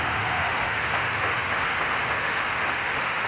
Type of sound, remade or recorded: remade